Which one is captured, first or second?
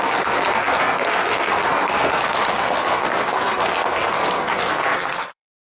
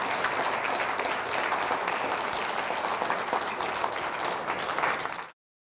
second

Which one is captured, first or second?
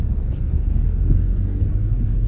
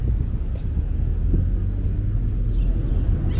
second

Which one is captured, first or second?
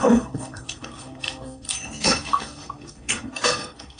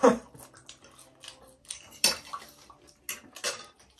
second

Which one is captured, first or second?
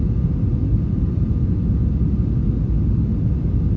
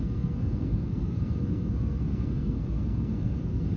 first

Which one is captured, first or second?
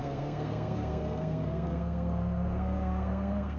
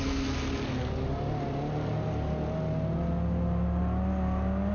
second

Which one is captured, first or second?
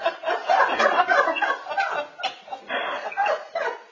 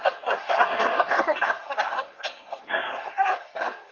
first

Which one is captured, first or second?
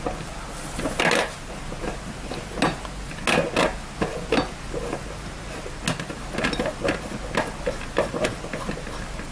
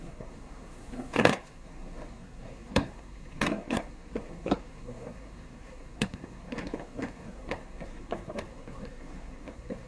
first